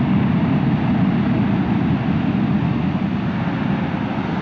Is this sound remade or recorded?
recorded